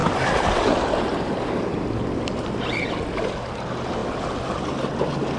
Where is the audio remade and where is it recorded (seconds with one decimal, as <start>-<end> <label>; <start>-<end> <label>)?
0.0-5.4 recorded